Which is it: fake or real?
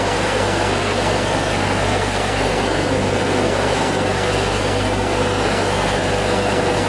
fake